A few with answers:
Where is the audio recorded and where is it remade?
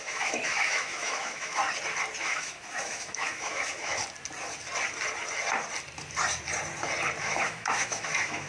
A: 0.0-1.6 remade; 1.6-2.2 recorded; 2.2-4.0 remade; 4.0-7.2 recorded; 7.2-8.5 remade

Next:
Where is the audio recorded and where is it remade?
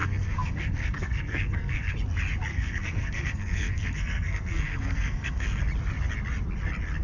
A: 0.0-1.9 remade; 1.9-2.5 recorded; 2.5-5.6 remade; 5.6-7.0 recorded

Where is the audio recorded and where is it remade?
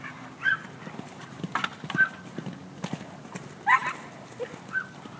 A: 0.0-5.2 recorded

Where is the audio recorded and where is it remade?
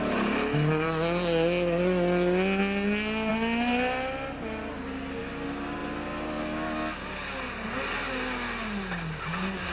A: 0.0-9.7 recorded